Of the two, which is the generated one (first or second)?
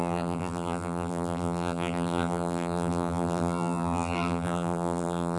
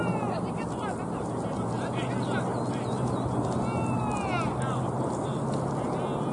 first